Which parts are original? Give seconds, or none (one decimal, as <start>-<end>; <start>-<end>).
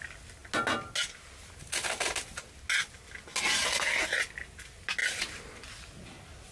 0.0-6.5